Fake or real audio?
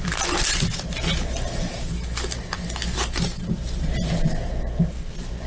real